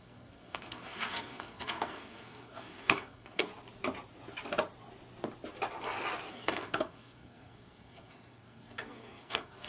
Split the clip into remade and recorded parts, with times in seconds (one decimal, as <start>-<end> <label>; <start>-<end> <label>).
0.0-3.5 remade; 3.5-6.3 recorded; 6.3-9.7 remade